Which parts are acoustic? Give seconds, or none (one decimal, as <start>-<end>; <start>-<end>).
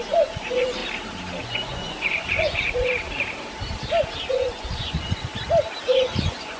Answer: 0.8-1.4; 2.9-4.3; 5.3-5.9